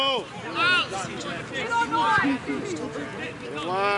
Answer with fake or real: real